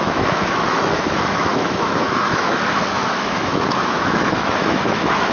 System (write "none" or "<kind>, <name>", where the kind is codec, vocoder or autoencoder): autoencoder, DAC-VAE